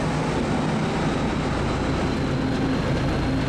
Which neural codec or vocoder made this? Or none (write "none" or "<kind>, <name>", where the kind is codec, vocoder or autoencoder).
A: none